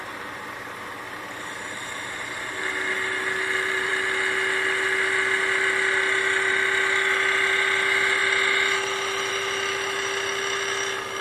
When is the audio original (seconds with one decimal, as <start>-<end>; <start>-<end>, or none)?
0.0-11.2